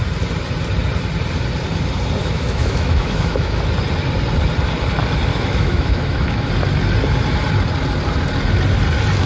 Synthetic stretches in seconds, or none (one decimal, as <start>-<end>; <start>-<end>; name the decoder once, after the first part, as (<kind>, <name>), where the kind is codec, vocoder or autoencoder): 2.2-3.6 (autoencoder, DAC-VAE); 5.3-6.5